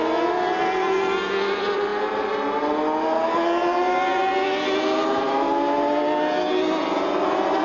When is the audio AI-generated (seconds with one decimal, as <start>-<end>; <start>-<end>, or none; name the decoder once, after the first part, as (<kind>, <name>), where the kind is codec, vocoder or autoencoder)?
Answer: none